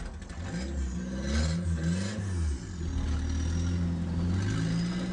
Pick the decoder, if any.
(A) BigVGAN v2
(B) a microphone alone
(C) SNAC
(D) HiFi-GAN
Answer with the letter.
B